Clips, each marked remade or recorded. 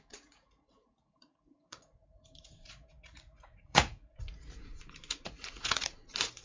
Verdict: remade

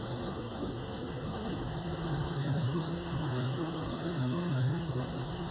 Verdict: remade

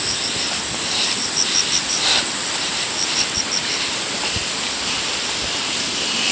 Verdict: recorded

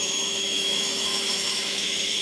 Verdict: remade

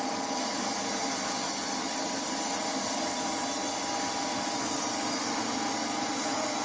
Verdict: recorded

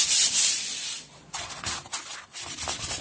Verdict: recorded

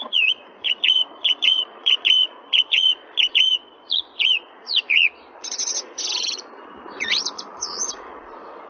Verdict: remade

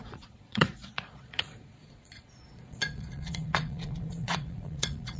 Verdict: remade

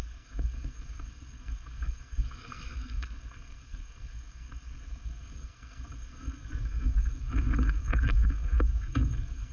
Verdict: remade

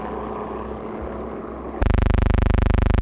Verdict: recorded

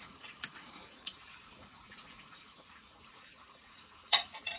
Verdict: remade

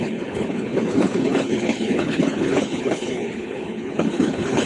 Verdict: remade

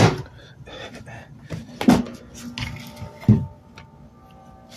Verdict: recorded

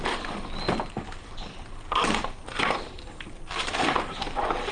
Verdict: recorded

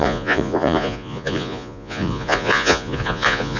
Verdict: remade